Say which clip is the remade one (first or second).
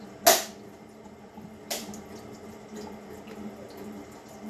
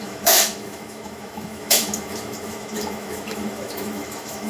second